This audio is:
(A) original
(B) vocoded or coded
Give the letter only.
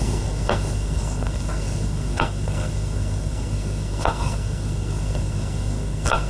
B